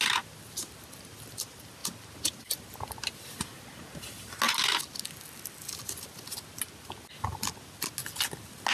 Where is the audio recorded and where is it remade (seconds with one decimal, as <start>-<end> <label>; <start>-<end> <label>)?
0.0-8.7 recorded